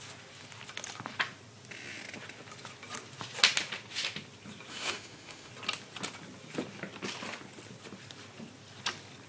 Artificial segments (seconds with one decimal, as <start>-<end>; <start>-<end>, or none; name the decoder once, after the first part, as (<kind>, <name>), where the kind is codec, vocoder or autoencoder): 4.7-5.5 (autoencoder, DAC-VAE)